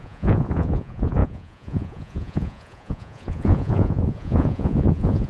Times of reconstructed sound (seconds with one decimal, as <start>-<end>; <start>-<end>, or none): 0.0-5.3